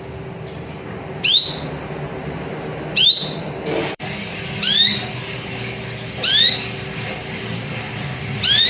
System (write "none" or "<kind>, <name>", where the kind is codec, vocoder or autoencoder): vocoder, BigVGAN v2